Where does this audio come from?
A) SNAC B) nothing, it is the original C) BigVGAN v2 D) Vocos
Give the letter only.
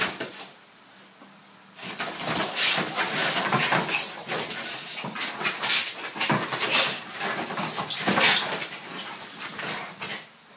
B